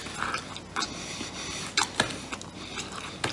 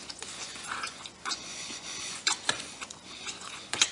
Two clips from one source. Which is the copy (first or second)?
second